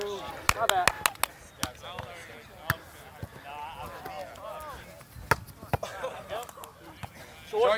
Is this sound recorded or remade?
recorded